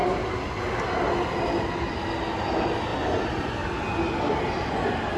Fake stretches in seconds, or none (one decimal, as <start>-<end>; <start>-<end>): none